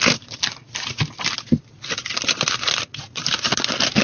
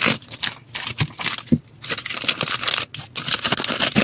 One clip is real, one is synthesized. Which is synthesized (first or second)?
first